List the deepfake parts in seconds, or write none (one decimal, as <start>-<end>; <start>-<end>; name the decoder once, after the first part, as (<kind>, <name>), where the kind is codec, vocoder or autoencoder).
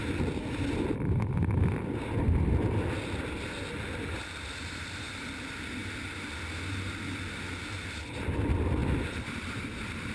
none